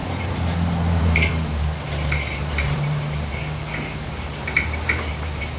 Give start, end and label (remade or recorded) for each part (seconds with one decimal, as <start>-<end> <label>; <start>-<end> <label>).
0.0-3.4 remade; 3.4-4.4 recorded; 4.4-5.6 remade